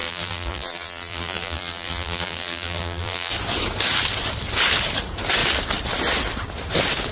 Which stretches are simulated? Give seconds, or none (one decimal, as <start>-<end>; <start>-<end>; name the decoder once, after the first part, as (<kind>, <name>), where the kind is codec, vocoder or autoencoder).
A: 0.0-3.3 (vocoder, BigVGAN v2)